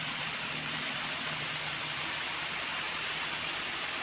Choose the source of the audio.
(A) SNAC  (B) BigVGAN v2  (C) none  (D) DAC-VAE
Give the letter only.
C